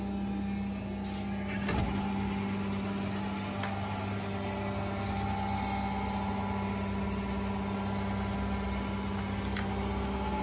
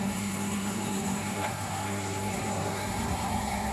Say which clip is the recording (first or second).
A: first